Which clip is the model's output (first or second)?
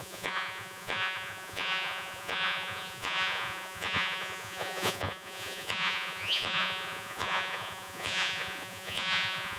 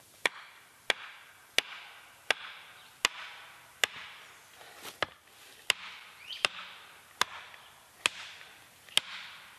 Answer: first